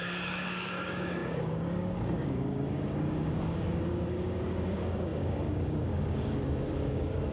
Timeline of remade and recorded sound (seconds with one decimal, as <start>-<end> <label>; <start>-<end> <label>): 0.0-7.3 remade